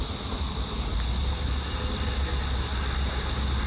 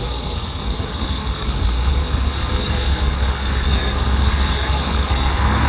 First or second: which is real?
first